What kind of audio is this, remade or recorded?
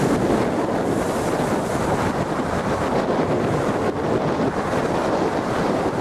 recorded